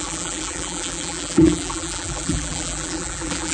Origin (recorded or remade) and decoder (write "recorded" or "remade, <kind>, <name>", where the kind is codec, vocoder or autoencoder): remade, vocoder, BigVGAN v2